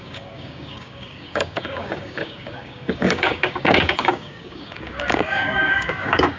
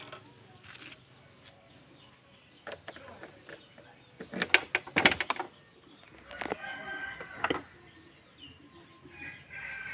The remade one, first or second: first